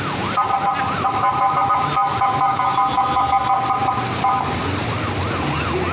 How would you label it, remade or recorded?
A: recorded